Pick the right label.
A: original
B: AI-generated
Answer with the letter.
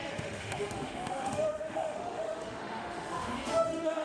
B